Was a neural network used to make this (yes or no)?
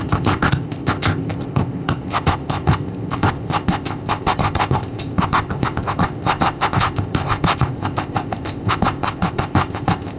yes